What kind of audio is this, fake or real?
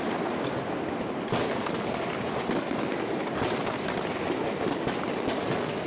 real